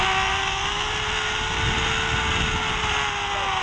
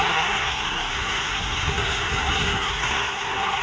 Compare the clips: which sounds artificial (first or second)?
second